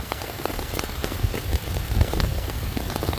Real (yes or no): no